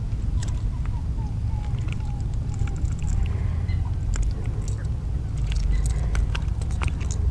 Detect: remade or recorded recorded